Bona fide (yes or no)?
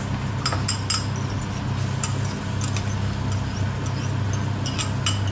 yes